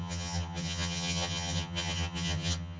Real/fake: fake